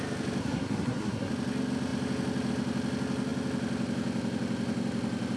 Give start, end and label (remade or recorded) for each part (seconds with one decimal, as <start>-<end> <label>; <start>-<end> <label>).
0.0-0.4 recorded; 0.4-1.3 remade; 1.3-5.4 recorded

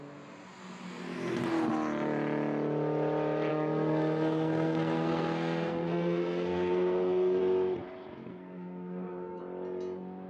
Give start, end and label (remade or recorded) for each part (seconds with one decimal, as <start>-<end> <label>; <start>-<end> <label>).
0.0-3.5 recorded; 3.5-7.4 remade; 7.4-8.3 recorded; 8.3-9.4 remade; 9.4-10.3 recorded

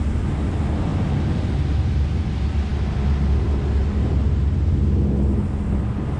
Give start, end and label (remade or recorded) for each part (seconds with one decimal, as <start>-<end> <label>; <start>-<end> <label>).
0.0-6.2 recorded

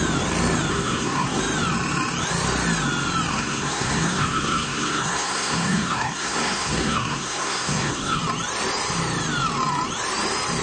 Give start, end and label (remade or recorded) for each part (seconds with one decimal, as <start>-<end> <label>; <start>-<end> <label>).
0.0-0.7 recorded; 0.7-1.4 remade; 1.4-3.3 recorded; 3.3-8.2 remade; 8.2-10.6 recorded

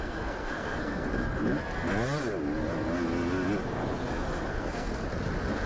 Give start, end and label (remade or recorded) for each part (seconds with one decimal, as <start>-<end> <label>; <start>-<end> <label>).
0.0-1.1 remade; 1.1-4.5 recorded; 4.5-4.9 remade; 4.9-5.7 recorded

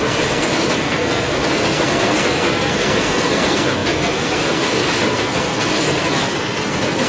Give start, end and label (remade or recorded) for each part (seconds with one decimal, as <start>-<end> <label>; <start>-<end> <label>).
0.0-7.1 remade